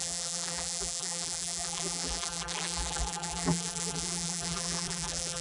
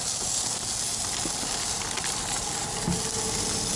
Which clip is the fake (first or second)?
first